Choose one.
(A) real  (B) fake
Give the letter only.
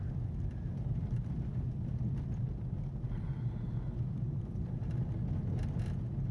A